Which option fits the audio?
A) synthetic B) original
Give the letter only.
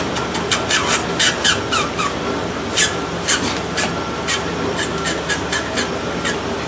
B